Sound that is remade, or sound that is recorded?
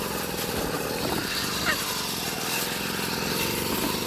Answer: recorded